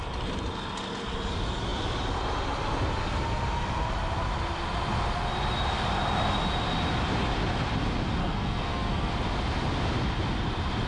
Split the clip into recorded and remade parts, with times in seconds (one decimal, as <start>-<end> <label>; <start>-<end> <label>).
0.0-8.2 recorded; 8.2-9.1 remade; 9.1-10.9 recorded